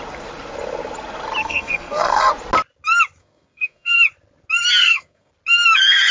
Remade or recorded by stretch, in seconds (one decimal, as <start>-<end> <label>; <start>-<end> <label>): 0.0-1.4 recorded; 1.4-2.3 remade; 2.3-3.2 recorded; 3.2-3.9 remade; 3.9-4.8 recorded; 4.8-5.3 remade; 5.3-6.1 recorded